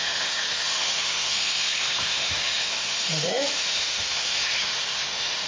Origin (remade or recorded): remade